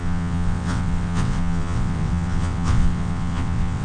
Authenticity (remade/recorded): remade